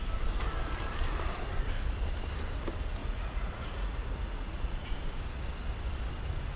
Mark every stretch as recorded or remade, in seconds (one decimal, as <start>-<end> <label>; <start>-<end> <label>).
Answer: 0.0-3.0 recorded; 3.0-4.9 remade; 4.9-6.6 recorded